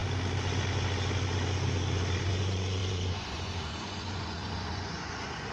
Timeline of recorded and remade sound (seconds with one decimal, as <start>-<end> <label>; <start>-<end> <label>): 0.0-2.3 recorded; 2.3-5.5 remade